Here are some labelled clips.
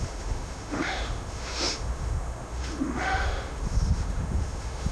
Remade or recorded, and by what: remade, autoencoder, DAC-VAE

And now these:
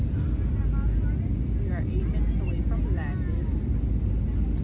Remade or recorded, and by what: recorded